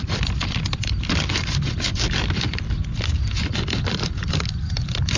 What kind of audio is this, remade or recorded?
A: recorded